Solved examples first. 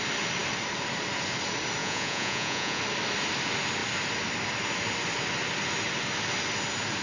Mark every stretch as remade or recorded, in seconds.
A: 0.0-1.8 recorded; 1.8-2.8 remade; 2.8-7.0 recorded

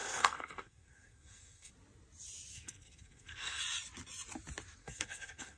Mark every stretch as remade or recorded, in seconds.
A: 0.0-1.7 remade; 1.7-2.5 recorded; 2.5-3.6 remade; 3.6-4.8 recorded; 4.8-5.6 remade

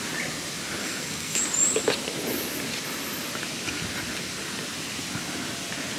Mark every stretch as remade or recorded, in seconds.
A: 0.0-0.8 recorded; 0.8-1.4 remade; 1.4-6.0 recorded

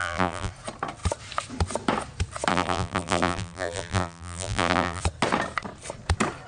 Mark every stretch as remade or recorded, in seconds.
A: 0.0-0.5 remade; 0.5-2.5 recorded; 2.5-5.0 remade; 5.0-6.5 recorded

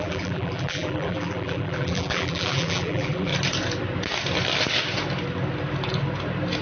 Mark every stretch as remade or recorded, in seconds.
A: 0.0-3.3 remade; 3.3-6.6 recorded

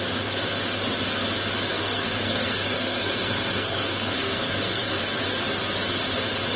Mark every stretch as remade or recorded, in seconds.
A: 0.0-1.7 recorded; 1.7-5.0 remade; 5.0-6.6 recorded